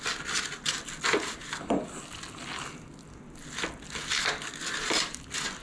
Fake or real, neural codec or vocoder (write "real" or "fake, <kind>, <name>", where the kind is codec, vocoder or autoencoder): real